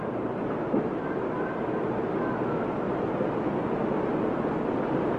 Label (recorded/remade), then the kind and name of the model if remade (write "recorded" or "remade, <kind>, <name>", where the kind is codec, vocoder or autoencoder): recorded